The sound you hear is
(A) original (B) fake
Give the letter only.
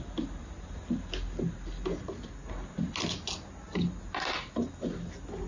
A